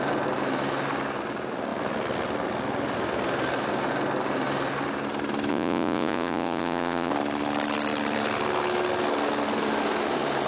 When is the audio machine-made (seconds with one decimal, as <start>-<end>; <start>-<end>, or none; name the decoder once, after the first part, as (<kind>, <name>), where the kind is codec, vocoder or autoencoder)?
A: 5.5-7.1 (vocoder, Vocos)